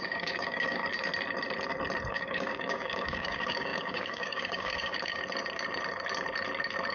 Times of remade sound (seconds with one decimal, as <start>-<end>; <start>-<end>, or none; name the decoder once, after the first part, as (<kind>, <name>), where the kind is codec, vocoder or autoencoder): 0.0-0.8 (codec, DAC); 2.1-5.2